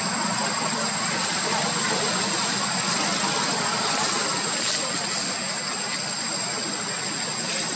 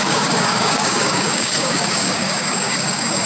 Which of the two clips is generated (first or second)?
second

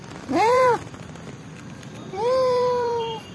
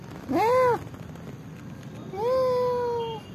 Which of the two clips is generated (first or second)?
first